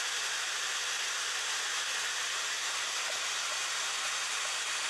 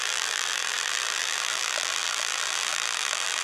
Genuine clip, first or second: first